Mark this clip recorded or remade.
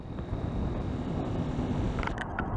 recorded